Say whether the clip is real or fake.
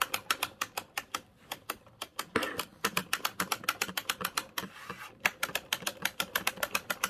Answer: fake